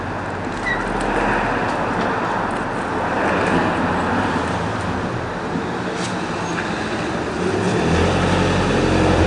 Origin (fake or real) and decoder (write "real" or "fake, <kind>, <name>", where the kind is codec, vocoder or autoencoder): real